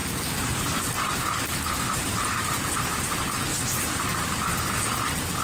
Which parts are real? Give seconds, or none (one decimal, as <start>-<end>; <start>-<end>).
1.3-3.5; 4.3-5.4